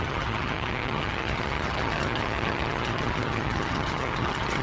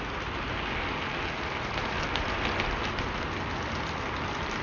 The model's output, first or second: first